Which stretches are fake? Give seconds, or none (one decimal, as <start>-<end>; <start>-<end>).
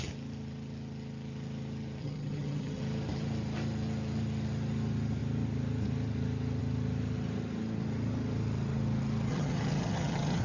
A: 2.0-2.8; 9.3-10.4